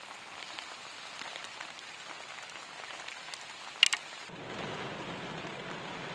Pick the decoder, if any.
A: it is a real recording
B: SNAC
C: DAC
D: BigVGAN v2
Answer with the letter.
A